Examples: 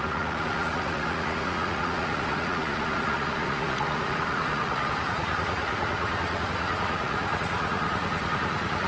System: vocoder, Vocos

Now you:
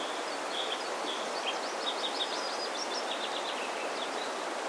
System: none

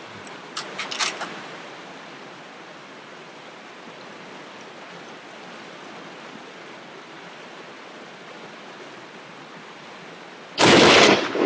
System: none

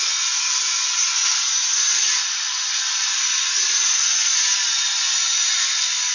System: none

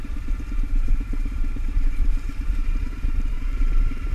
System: vocoder, BigVGAN v2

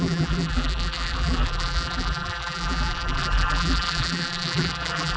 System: vocoder, BigVGAN v2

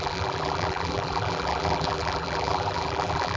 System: vocoder, BigVGAN v2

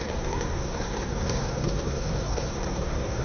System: codec, SNAC